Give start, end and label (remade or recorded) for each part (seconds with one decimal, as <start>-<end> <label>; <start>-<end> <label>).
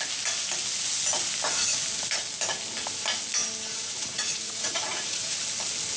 0.0-3.7 recorded; 3.7-5.4 remade; 5.4-6.0 recorded